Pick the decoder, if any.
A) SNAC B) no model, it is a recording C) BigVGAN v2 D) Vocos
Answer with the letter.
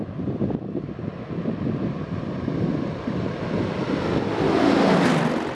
B